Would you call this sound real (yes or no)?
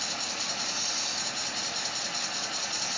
yes